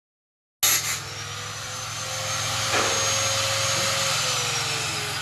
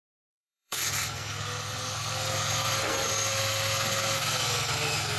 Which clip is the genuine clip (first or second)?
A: first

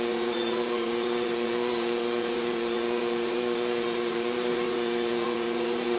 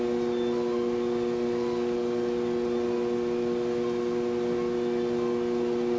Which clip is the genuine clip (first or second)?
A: second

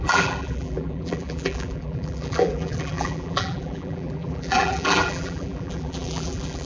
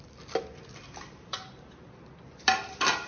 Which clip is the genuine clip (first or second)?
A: second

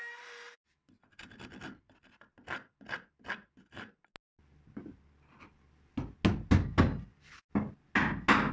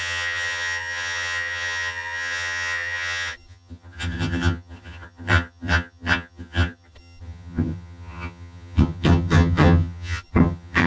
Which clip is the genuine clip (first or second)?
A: first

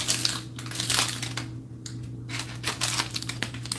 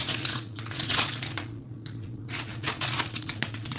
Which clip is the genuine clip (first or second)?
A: first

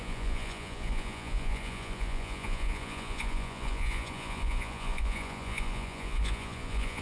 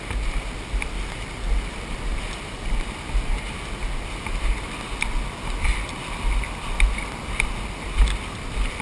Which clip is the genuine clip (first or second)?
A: second